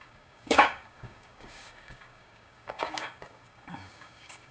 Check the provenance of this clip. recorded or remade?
remade